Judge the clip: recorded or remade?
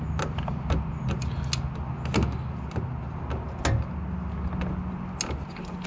recorded